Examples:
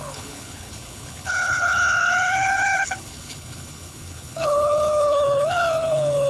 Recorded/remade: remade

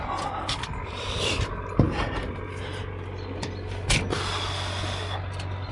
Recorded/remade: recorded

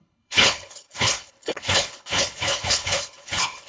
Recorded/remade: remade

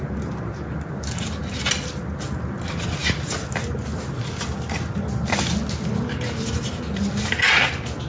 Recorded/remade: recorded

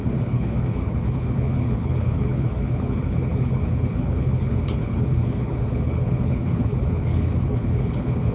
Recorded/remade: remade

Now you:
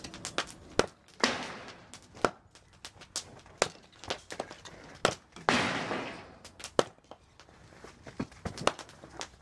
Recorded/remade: recorded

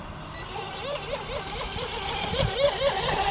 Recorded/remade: recorded